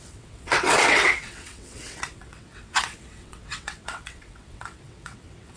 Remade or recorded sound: remade